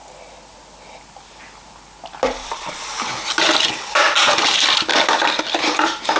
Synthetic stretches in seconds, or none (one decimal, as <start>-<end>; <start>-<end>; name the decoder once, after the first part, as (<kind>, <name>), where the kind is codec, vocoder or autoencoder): none

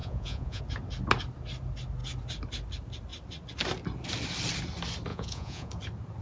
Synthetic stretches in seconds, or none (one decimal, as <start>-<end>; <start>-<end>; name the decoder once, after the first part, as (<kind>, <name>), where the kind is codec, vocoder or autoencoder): 0.0-0.6 (vocoder, Vocos); 5.1-5.7